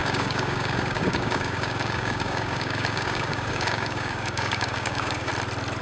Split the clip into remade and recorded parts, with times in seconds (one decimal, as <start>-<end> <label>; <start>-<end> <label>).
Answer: 0.0-5.3 remade; 5.3-5.8 recorded